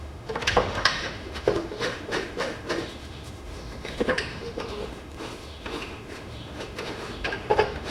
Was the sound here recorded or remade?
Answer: remade